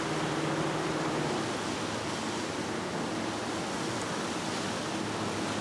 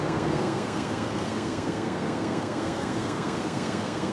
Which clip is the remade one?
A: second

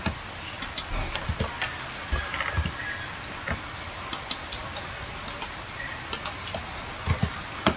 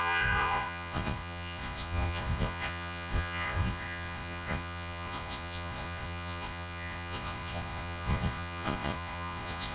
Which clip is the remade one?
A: second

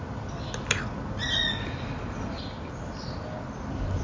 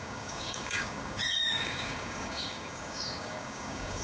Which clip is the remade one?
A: second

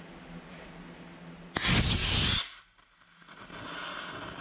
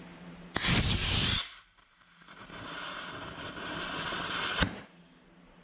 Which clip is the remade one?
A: second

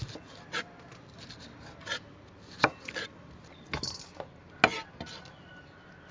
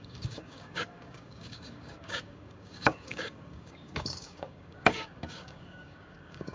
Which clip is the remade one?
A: second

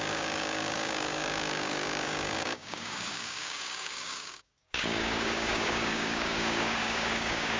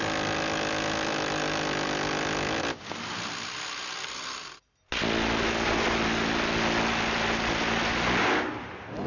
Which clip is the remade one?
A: first